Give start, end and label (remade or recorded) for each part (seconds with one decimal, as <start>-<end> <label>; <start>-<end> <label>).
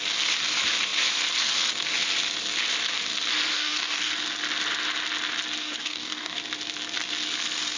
0.0-3.5 recorded; 3.5-4.1 remade; 4.1-5.6 recorded; 5.6-6.4 remade; 6.4-7.8 recorded